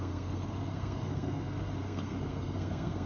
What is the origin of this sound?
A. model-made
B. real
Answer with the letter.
A